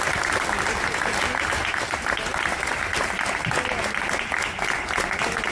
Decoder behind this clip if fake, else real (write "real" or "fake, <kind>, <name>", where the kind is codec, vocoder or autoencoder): real